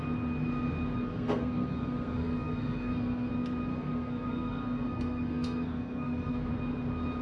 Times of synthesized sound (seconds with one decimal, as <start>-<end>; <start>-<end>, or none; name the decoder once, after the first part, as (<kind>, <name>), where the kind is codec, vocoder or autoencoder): 1.1-3.3 (codec, SNAC); 3.7-6.5